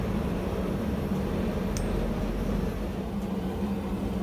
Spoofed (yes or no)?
no